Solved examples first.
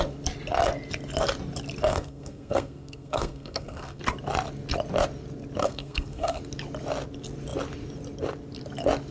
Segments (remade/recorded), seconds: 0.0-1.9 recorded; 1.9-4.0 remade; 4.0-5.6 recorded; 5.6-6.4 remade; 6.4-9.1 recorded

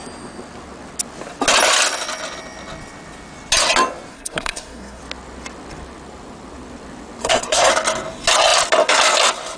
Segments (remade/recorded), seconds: 0.0-4.1 recorded; 4.1-5.0 remade; 5.0-7.2 recorded; 7.2-7.7 remade; 7.7-9.6 recorded

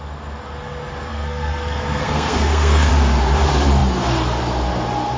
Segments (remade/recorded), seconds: 0.0-1.1 recorded; 1.1-2.9 remade; 2.9-5.2 recorded

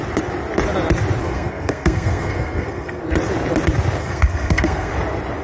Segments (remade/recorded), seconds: 0.0-1.2 recorded; 1.2-3.0 remade; 3.0-4.0 recorded; 4.0-4.9 remade; 4.9-5.4 recorded